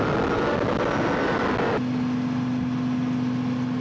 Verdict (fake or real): real